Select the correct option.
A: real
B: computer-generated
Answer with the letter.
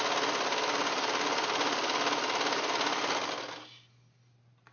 A